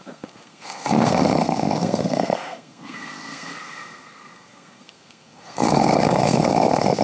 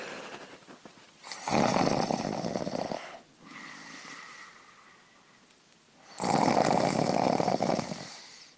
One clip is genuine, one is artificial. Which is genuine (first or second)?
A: second